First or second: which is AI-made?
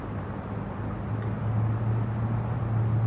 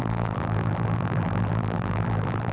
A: second